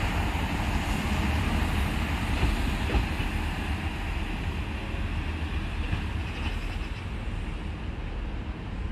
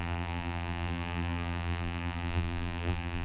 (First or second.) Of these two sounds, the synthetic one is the second